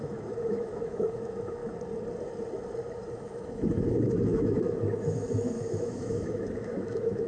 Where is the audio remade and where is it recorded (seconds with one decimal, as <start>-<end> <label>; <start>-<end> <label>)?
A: 0.0-1.6 remade; 1.6-3.2 recorded; 3.2-7.3 remade

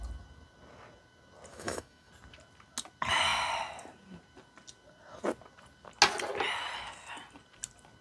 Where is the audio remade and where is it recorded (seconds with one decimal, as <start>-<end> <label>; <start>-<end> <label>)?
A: 0.0-1.5 recorded; 1.5-2.1 remade; 2.1-8.0 recorded

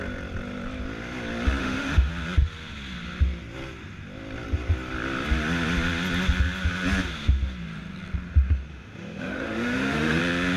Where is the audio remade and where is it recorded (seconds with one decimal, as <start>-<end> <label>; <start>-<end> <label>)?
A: 0.0-1.6 recorded; 1.6-2.1 remade; 2.1-8.7 recorded; 8.7-10.2 remade; 10.2-10.6 recorded

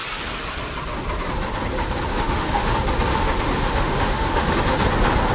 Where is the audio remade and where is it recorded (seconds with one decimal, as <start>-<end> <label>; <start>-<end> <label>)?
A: 0.0-2.1 recorded; 2.1-2.7 remade; 2.7-3.1 recorded; 3.1-4.5 remade; 4.5-5.3 recorded

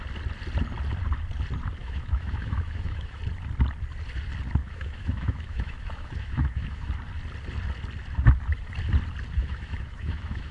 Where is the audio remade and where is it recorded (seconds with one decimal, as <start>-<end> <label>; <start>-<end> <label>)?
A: 0.0-1.8 recorded; 1.8-3.2 remade; 3.2-4.6 recorded; 4.6-6.9 remade; 6.9-9.4 recorded; 9.4-10.5 remade

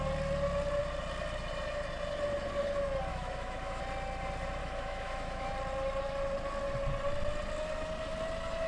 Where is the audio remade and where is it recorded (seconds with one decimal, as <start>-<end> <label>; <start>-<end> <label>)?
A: 0.0-3.1 recorded; 3.1-3.8 remade; 3.8-4.6 recorded; 4.6-5.5 remade; 5.5-8.7 recorded

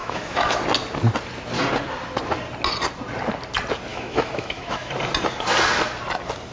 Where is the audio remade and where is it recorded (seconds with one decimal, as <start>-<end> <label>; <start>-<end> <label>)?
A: 0.0-0.6 remade; 0.6-3.9 recorded; 3.9-4.9 remade; 4.9-6.5 recorded